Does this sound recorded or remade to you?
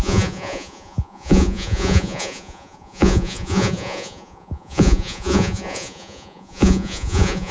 remade